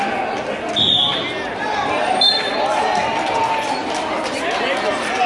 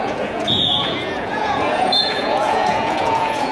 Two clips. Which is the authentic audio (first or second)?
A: first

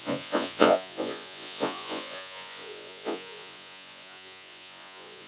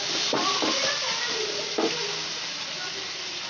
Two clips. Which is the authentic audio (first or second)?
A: second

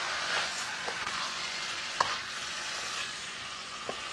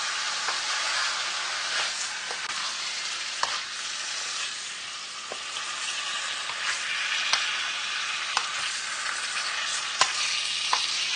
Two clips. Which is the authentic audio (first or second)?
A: second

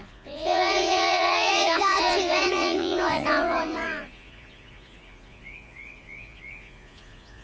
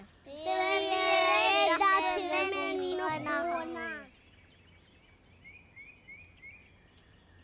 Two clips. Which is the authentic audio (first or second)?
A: second